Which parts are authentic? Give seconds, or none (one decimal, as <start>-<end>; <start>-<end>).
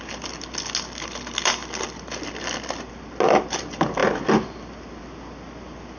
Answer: 0.0-6.0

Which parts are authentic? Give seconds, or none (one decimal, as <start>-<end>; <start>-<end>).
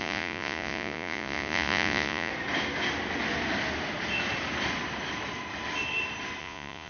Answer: 2.3-6.4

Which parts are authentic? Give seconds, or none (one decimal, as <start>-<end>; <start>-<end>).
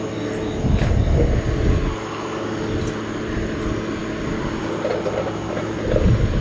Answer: 0.0-6.4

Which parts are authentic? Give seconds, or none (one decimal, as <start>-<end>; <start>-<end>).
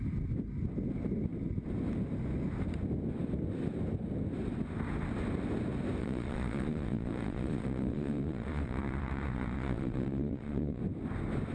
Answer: 0.0-6.0; 10.8-11.5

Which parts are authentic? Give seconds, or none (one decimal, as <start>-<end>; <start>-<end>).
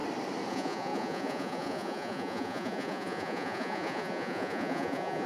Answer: 0.0-0.5